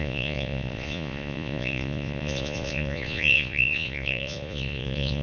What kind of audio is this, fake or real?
fake